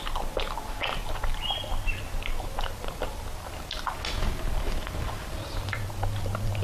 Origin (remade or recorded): recorded